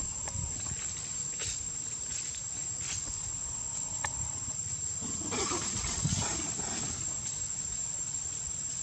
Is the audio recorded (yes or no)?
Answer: no